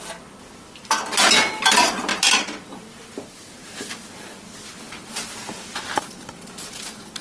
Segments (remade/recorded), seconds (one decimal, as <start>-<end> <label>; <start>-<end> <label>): 0.0-7.2 recorded

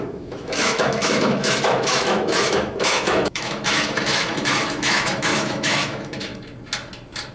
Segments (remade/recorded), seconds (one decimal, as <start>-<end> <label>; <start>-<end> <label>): 0.0-6.3 remade; 6.3-7.3 recorded

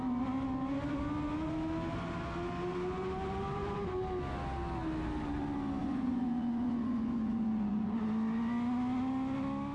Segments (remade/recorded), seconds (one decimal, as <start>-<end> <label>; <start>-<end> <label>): 0.0-5.8 recorded; 5.8-8.0 remade; 8.0-9.7 recorded